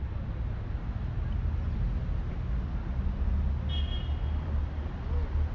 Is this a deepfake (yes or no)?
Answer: no